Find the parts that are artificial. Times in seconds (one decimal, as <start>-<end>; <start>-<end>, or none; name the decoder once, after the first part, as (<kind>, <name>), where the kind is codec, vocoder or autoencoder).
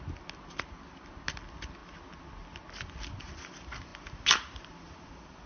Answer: none